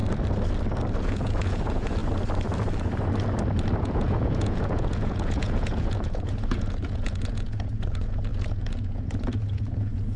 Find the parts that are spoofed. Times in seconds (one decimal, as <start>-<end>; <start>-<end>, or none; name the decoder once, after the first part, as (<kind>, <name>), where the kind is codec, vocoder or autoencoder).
1.0-2.0 (vocoder, Vocos); 3.8-10.2